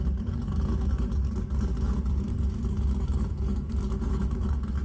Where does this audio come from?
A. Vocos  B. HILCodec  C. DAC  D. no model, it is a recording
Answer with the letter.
C